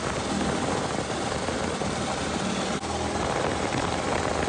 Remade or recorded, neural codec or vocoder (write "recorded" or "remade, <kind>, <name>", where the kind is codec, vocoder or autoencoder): recorded